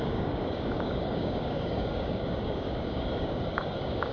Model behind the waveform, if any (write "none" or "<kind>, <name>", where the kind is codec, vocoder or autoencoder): codec, DAC